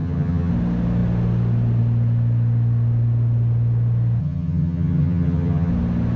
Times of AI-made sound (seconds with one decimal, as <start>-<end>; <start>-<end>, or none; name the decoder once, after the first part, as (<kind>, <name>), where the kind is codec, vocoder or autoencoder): 0.0-0.5 (vocoder, HiFi-GAN); 4.2-5.7